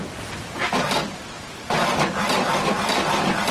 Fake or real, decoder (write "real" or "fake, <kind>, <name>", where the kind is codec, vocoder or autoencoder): fake, vocoder, BigVGAN v2